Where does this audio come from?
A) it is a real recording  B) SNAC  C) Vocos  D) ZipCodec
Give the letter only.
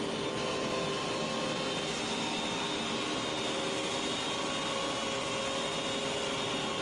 A